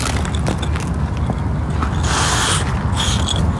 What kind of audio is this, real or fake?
real